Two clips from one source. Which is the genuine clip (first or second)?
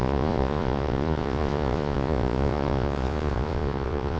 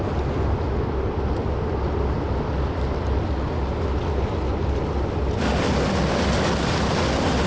second